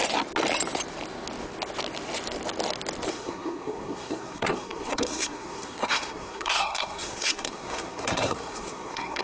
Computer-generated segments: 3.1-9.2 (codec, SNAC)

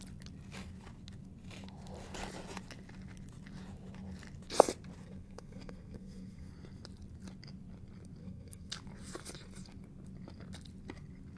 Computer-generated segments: 5.0-6.5 (codec, SNAC); 8.2-8.7

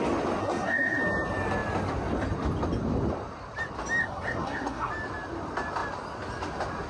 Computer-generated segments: 0.4-1.0 (codec, SNAC); 4.0-4.9

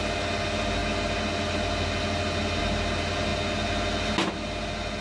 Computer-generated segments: none